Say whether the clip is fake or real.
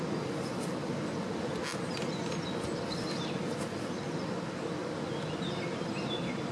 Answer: real